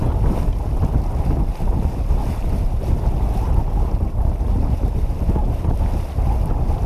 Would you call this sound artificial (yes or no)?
no